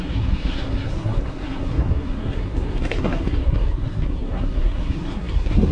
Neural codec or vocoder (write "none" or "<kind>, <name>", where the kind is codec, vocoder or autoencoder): codec, SNAC